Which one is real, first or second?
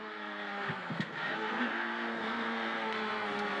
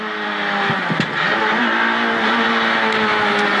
second